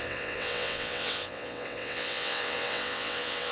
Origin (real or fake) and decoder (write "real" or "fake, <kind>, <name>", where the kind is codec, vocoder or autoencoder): fake, vocoder, WaveNeXt